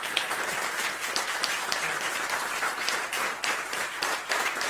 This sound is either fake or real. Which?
fake